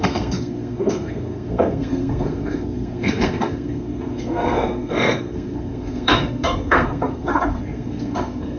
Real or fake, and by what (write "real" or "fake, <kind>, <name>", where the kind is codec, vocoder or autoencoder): fake, codec, SNAC